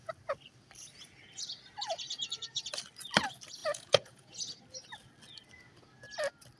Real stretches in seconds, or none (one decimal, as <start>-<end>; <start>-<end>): 0.0-3.6; 4.3-6.6